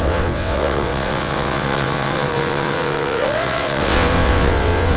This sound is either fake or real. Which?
fake